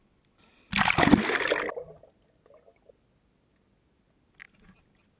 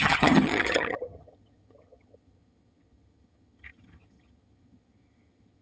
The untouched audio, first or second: first